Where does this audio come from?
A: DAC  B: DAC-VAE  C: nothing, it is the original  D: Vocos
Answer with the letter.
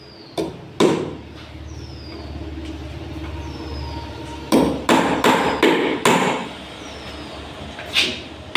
C